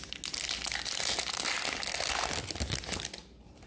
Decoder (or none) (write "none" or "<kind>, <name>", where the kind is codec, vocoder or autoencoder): none